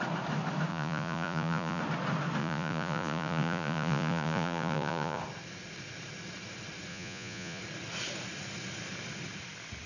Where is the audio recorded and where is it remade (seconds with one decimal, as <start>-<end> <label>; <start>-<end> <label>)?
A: 0.0-0.7 recorded; 0.7-1.8 remade; 1.8-2.4 recorded; 2.4-5.2 remade; 5.2-6.9 recorded; 6.9-7.6 remade; 7.6-9.9 recorded